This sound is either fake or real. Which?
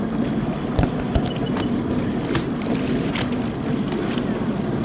real